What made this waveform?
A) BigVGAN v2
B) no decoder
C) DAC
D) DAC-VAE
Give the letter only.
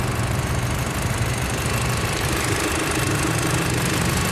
A